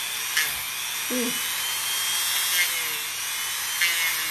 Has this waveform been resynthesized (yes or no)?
no